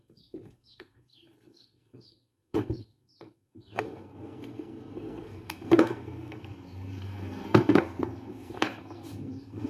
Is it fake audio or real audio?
fake